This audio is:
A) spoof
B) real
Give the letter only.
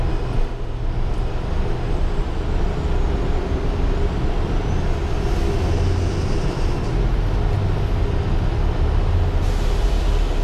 B